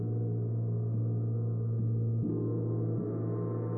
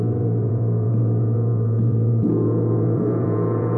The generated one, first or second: second